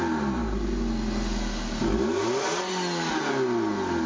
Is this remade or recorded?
recorded